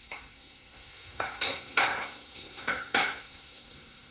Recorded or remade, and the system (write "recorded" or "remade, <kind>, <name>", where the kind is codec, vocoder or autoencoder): remade, codec, SNAC